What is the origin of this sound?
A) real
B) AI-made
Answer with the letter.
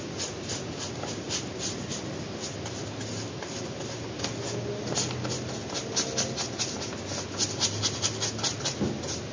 A